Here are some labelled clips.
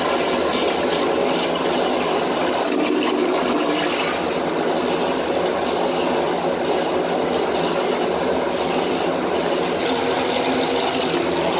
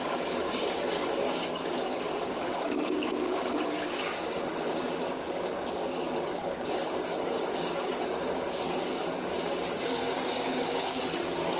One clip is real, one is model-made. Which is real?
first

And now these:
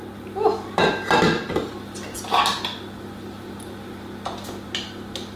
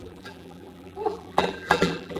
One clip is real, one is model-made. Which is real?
first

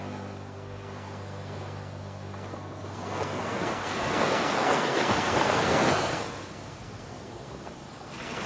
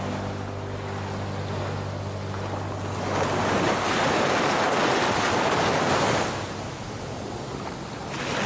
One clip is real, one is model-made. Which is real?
second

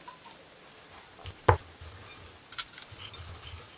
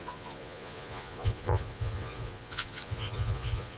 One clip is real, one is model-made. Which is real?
first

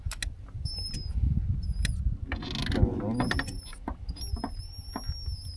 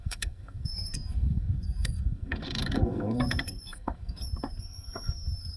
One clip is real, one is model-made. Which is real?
first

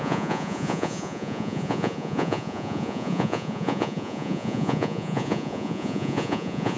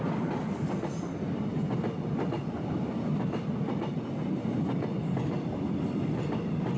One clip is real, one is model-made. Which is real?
second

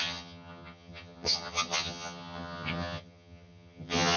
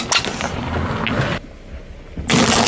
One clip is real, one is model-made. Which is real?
second